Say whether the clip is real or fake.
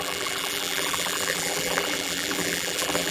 fake